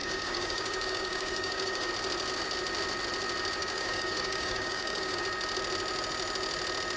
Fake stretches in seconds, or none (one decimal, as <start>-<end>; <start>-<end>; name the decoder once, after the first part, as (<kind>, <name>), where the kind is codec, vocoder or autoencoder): 0.0-1.9 (codec, DAC); 3.6-5.2